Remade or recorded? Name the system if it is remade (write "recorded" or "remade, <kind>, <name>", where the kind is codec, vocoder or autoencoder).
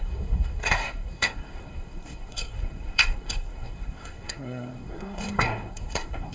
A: remade, codec, SNAC